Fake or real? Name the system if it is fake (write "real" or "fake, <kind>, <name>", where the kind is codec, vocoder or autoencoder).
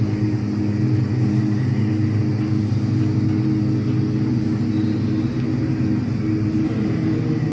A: real